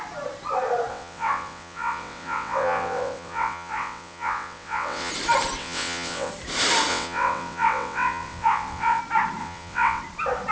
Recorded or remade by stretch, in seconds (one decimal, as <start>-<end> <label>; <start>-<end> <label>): 0.0-0.9 recorded; 0.9-5.1 remade; 5.1-5.6 recorded; 5.6-6.3 remade; 6.3-6.9 recorded; 6.9-9.0 remade; 9.0-9.4 recorded; 9.4-10.0 remade; 10.0-10.5 recorded